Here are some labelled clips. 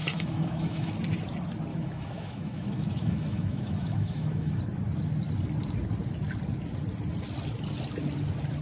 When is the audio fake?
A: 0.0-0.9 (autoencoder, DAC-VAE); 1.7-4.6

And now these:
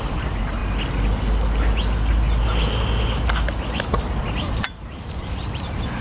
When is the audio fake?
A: 0.0-0.6 (vocoder, BigVGAN v2); 4.2-6.0

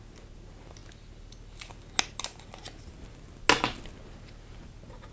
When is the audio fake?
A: none

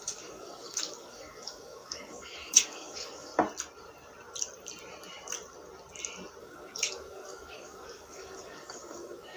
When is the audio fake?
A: 0.0-3.3 (codec, DAC); 6.4-9.4

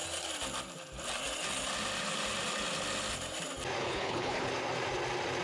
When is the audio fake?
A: 3.8-4.5 (codec, HILCodec)